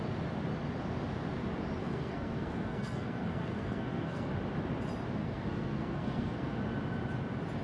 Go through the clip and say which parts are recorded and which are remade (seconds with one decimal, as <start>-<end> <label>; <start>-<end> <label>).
0.0-1.8 recorded; 1.8-4.3 remade; 4.3-5.2 recorded; 5.2-6.6 remade; 6.6-7.6 recorded